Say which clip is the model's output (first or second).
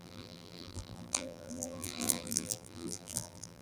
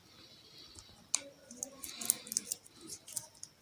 first